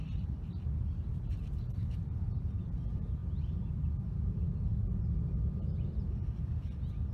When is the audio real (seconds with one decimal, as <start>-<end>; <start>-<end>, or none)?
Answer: 0.0-7.1